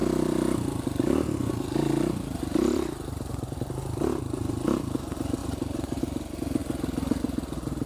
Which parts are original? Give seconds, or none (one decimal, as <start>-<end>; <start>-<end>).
4.5-5.4; 6.0-7.9

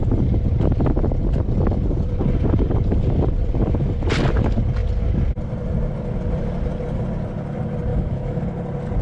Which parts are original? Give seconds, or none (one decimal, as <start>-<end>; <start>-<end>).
0.0-7.9; 8.4-9.0

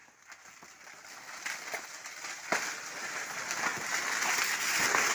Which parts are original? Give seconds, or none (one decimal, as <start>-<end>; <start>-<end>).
3.1-5.1

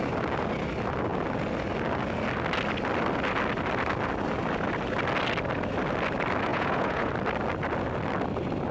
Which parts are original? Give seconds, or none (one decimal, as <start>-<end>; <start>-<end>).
0.0-6.5; 7.1-8.7